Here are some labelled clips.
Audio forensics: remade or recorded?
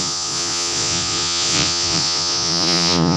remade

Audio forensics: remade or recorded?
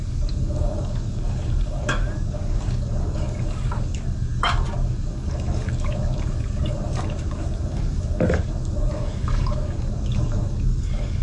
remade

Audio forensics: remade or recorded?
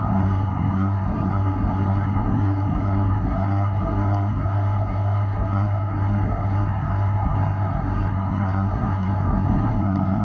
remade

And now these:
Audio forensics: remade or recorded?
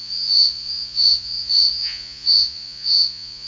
remade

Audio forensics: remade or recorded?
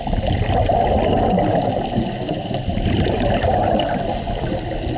recorded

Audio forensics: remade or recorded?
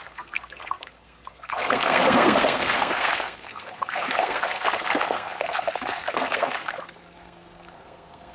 remade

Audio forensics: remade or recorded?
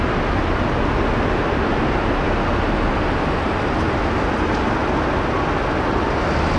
recorded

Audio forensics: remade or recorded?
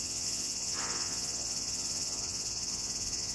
remade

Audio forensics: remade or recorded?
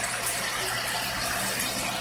recorded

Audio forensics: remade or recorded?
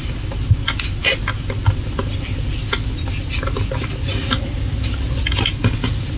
recorded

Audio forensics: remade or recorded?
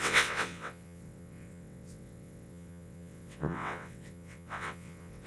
remade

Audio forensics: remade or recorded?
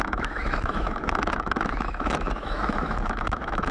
remade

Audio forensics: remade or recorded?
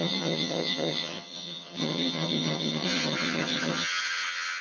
remade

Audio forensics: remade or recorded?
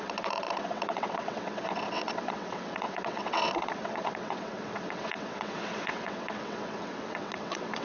remade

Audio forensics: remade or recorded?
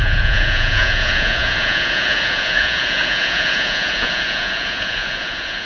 remade